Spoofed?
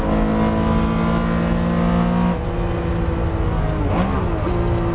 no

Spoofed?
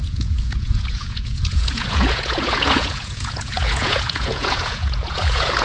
yes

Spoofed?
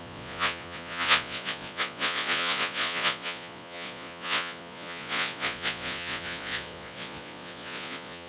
yes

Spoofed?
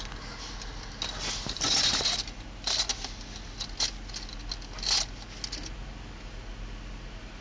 no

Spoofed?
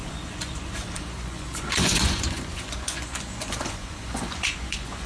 yes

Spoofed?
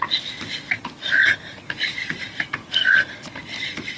no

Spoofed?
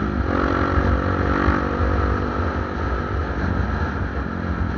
no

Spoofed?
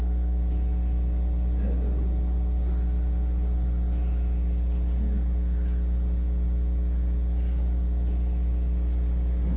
no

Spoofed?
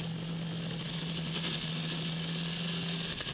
no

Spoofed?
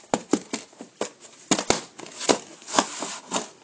no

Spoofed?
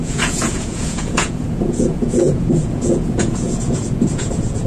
yes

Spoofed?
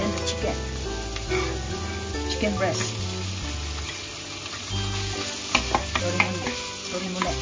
no